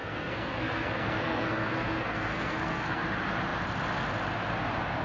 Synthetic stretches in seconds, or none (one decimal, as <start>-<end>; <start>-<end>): 0.0-3.0